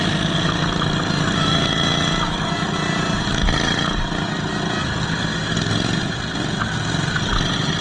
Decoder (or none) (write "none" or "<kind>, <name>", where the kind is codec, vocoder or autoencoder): none